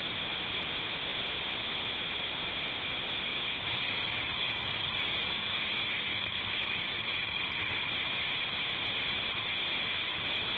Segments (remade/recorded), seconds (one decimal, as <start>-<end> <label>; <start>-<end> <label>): 0.0-3.3 recorded; 3.3-5.6 remade; 5.6-6.1 recorded; 6.1-7.4 remade; 7.4-10.6 recorded